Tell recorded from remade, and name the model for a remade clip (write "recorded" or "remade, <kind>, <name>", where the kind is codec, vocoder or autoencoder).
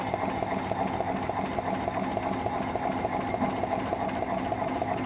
recorded